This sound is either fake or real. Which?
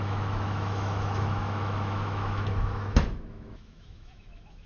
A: fake